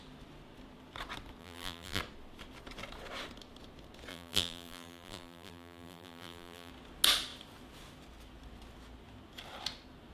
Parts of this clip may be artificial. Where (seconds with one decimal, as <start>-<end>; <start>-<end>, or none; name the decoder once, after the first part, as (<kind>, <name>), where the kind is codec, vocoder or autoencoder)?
1.4-2.0 (vocoder, BigVGAN v2); 4.1-6.7